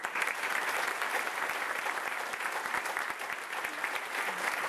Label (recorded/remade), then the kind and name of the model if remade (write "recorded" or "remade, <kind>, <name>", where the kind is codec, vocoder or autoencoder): recorded